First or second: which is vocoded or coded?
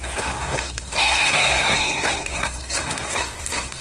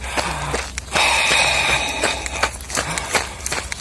first